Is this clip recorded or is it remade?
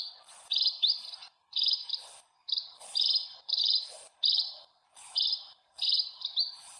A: recorded